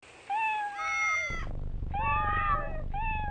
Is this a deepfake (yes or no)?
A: no